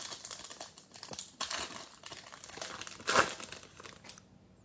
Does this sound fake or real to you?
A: real